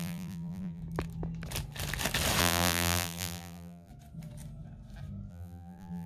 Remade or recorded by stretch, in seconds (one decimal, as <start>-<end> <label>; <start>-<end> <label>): 0.0-0.8 remade; 0.8-2.4 recorded; 2.4-3.9 remade; 3.9-5.3 recorded; 5.3-6.1 remade